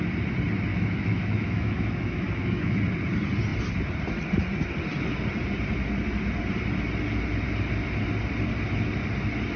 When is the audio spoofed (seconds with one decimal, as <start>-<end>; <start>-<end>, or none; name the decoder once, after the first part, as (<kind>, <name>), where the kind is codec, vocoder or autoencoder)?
0.7-2.8 (autoencoder, DAC-VAE)